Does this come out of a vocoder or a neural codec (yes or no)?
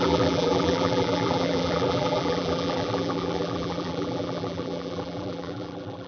yes